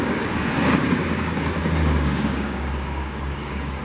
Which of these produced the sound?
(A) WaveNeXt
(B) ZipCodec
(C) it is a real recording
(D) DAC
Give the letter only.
D